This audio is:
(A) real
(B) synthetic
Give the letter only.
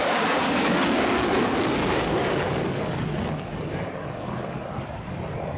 B